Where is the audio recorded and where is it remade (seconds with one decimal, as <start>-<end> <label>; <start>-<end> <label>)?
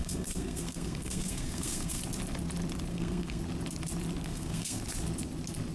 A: 0.0-2.0 remade; 2.0-2.9 recorded; 2.9-3.4 remade; 3.4-4.3 recorded; 4.3-4.8 remade; 4.8-5.7 recorded